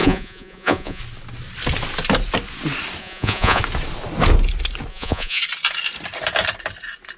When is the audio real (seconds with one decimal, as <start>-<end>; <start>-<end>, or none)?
1.0-3.0; 3.6-4.9; 5.4-7.2